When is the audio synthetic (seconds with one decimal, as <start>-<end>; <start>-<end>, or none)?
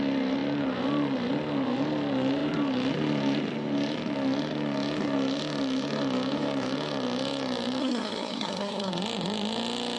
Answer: 7.8-8.9